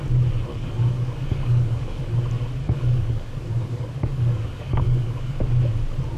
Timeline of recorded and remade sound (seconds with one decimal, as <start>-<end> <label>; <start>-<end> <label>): 0.0-0.5 recorded; 0.5-2.0 remade; 2.0-2.6 recorded; 2.6-5.5 remade; 5.5-6.2 recorded